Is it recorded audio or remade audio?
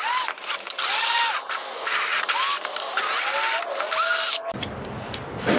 recorded